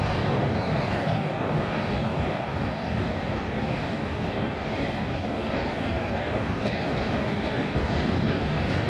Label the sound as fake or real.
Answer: fake